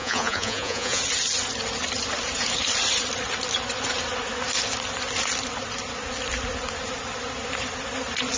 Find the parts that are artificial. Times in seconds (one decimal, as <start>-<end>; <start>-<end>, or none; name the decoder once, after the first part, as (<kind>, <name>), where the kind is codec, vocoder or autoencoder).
0.0-1.0 (vocoder, Vocos)